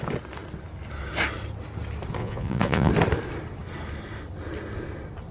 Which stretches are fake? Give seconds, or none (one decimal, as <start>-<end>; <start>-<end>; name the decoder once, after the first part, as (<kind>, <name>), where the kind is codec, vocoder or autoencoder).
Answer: 2.2-2.9 (vocoder, Vocos)

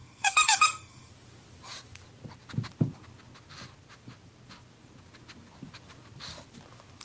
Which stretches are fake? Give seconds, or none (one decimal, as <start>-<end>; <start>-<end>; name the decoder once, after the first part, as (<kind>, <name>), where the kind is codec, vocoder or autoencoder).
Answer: 0.0-1.1 (codec, SNAC)

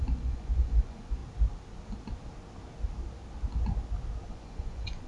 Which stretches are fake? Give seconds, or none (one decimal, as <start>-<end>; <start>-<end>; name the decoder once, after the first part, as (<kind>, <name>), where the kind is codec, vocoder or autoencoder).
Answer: 0.0-1.2 (vocoder, Vocos); 4.3-5.1